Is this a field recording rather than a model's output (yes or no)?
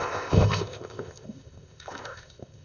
no